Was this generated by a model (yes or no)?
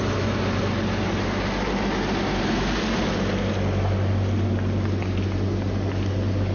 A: no